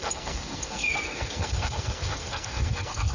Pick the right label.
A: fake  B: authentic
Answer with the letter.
A